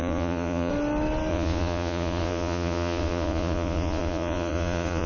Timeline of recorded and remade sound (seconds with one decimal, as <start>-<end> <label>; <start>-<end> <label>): 0.0-0.7 remade; 0.7-1.3 recorded; 1.3-5.1 remade